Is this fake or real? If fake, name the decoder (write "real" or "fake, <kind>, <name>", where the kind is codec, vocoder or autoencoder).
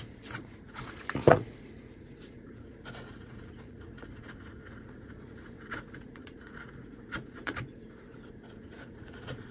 fake, vocoder, Vocos